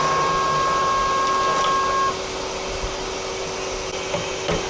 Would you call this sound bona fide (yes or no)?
yes